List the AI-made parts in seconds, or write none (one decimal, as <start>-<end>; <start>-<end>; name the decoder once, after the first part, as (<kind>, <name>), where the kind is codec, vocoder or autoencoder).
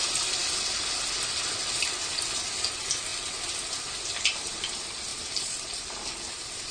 none